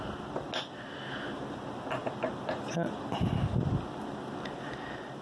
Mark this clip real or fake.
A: real